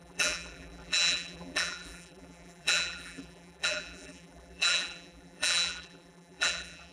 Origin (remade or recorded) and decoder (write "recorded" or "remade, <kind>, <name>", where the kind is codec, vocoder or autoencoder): remade, vocoder, BigVGAN v2